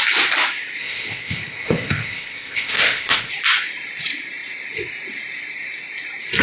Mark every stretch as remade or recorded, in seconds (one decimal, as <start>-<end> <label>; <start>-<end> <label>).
0.0-0.8 recorded; 0.8-3.3 remade; 3.3-6.4 recorded